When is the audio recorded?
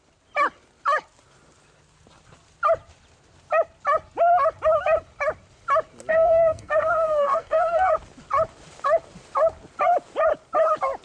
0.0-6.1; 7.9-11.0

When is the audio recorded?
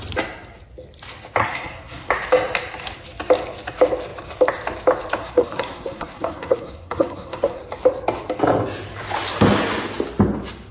0.0-1.4; 2.1-5.2; 7.6-10.7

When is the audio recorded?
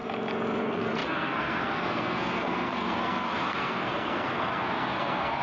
0.0-0.6